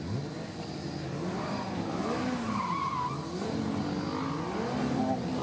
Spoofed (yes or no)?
no